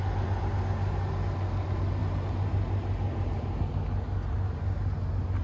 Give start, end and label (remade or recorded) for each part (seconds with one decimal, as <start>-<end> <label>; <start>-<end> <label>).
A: 0.0-5.4 recorded